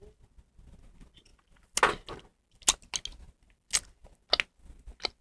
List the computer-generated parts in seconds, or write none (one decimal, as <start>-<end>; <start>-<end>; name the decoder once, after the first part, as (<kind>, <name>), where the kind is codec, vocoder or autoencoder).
none